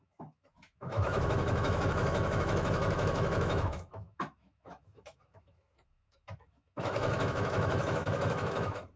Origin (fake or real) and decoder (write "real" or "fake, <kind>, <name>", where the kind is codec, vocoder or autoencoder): fake, autoencoder, DAC-VAE